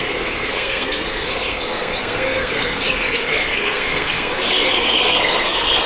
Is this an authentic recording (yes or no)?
no